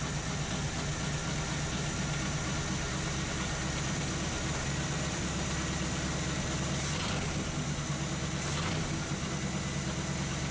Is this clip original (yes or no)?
yes